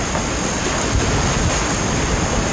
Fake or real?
real